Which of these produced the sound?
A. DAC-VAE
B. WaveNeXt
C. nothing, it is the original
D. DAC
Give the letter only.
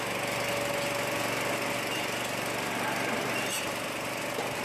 C